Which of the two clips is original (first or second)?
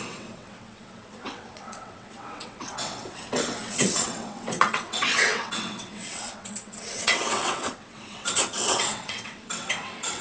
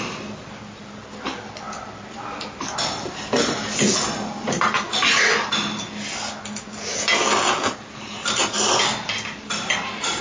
second